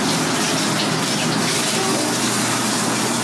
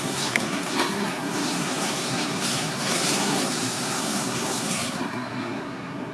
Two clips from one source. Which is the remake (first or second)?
second